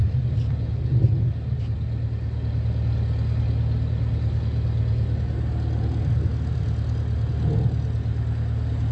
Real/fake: real